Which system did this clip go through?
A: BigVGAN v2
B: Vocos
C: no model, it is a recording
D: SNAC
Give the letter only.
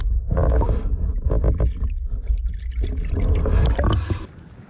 C